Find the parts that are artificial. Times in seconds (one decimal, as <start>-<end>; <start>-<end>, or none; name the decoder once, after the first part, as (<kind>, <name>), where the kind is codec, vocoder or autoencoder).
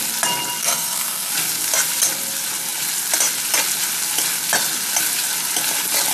0.6-1.3 (codec, SNAC)